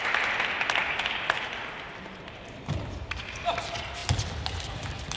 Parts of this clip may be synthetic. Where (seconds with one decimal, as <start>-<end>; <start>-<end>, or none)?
0.8-2.8